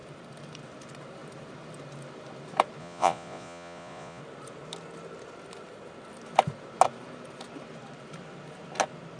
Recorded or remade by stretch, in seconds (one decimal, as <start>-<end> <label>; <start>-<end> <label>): 0.0-2.8 recorded; 2.8-4.2 remade; 4.2-9.2 recorded